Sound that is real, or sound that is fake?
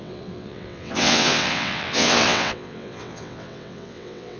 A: fake